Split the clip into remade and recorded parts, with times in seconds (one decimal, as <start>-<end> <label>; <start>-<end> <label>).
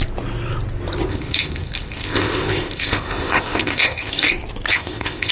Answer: 0.0-1.1 recorded; 1.1-4.3 remade; 4.3-4.7 recorded; 4.7-5.3 remade